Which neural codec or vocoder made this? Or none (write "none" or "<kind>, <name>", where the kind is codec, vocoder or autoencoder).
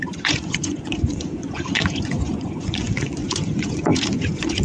vocoder, Vocos